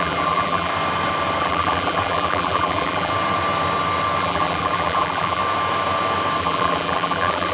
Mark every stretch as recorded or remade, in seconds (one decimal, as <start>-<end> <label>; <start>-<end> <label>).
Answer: 0.0-0.7 remade; 0.7-1.4 recorded; 1.4-3.1 remade; 3.1-4.2 recorded; 4.2-5.4 remade; 5.4-6.4 recorded; 6.4-7.5 remade